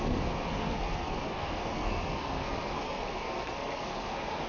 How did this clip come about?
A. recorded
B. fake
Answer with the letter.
B